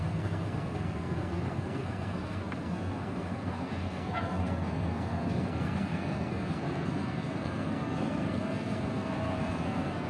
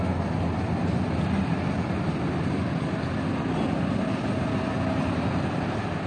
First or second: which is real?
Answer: second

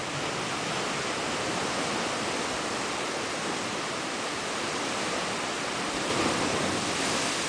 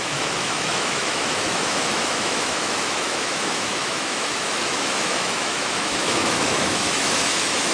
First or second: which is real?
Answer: first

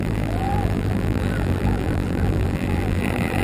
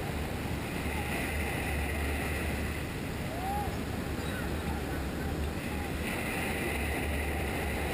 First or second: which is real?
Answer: second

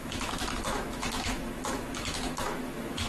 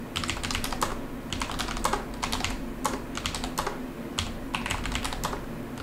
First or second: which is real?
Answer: second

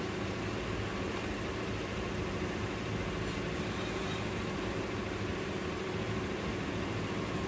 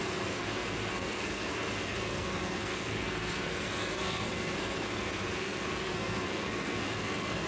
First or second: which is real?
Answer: first